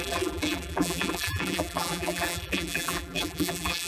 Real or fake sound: fake